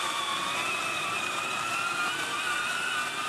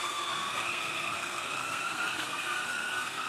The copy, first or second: second